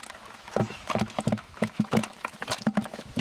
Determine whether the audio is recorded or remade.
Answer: remade